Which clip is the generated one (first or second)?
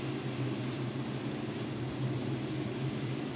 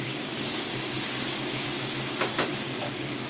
second